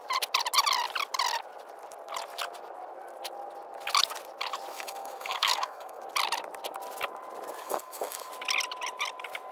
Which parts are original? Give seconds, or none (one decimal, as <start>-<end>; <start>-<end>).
0.0-4.7; 6.0-7.6; 8.3-9.5